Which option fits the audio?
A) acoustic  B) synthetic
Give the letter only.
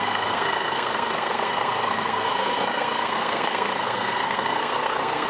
B